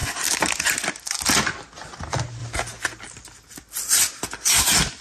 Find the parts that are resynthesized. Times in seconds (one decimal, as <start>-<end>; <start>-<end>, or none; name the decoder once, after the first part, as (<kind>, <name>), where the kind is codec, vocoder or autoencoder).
none